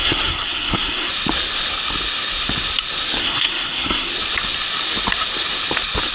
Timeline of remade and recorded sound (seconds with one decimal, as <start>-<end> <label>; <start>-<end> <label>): 0.0-1.1 remade; 1.1-3.2 recorded; 3.2-4.1 remade; 4.1-6.1 recorded